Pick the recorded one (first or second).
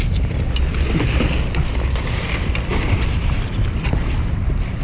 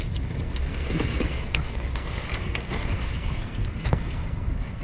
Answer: first